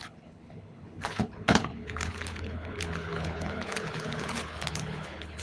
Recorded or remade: remade